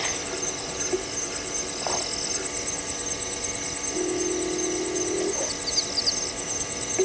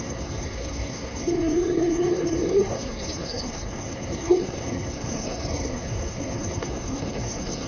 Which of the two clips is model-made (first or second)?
second